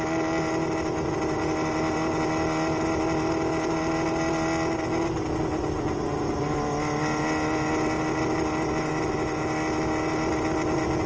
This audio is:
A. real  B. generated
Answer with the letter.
A